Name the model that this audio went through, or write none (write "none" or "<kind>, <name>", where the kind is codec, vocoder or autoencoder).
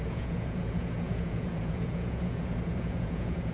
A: vocoder, Vocos